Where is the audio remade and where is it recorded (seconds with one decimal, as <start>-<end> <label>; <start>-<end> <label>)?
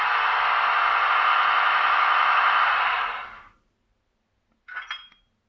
0.0-1.3 recorded; 1.3-2.6 remade; 2.6-5.5 recorded